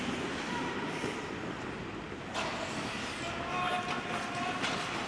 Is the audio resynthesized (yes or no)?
no